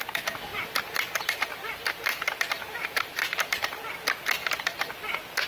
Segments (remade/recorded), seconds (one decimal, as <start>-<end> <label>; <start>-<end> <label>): 0.0-0.5 recorded; 0.5-3.8 remade; 3.8-4.4 recorded; 4.4-4.9 remade; 4.9-5.5 recorded